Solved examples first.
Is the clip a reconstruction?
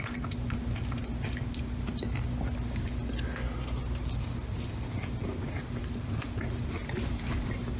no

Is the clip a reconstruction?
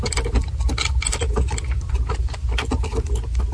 no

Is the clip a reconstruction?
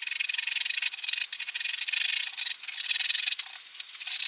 no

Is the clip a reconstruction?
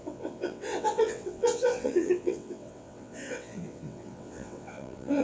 yes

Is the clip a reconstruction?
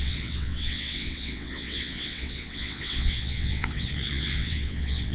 yes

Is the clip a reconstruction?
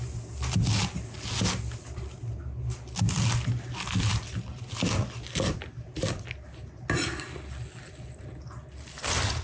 no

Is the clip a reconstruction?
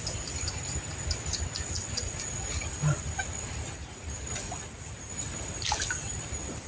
no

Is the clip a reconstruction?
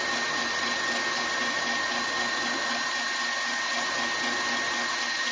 no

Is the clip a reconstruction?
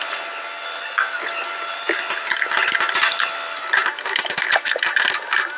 no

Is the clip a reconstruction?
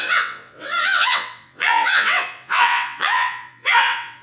yes